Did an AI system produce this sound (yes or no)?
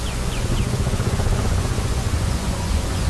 yes